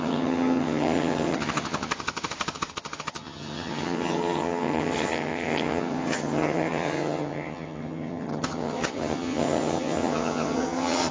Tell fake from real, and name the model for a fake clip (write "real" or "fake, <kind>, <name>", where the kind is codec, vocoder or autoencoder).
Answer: fake, vocoder, HiFi-GAN